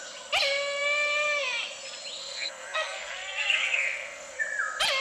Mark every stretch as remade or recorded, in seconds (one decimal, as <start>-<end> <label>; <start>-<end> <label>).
0.0-2.2 recorded; 2.2-4.4 remade; 4.4-5.0 recorded